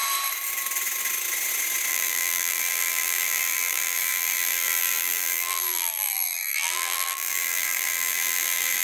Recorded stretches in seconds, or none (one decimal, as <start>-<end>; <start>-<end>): 0.0-1.9